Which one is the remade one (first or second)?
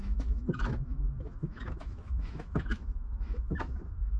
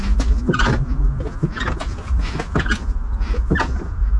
first